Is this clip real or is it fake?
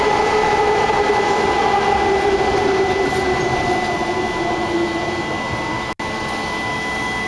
real